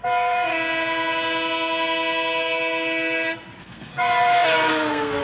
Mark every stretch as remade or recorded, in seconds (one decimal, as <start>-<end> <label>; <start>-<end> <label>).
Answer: 0.0-0.5 remade; 0.5-3.6 recorded; 3.6-5.2 remade